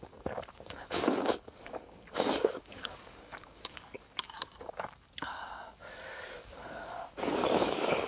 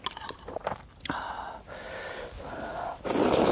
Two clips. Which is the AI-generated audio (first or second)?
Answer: first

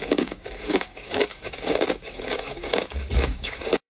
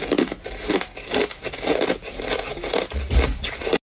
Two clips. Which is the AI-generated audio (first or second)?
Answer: first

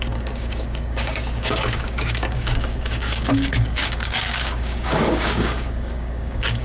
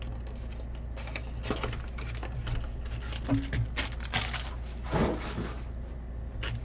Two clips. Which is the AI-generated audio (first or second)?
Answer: first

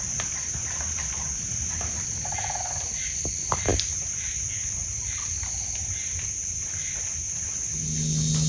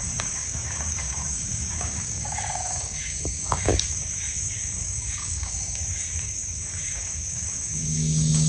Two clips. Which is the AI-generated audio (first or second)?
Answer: second